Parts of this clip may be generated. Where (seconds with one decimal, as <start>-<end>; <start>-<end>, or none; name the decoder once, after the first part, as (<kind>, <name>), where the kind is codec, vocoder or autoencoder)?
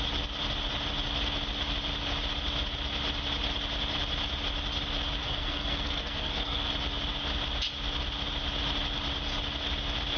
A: 5.2-6.7 (codec, SNAC)